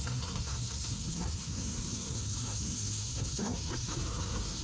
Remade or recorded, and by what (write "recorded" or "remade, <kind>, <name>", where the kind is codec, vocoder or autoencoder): remade, codec, SNAC